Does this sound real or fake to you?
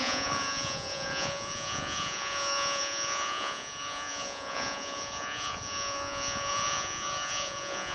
fake